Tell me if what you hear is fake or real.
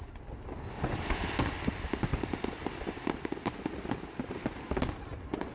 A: real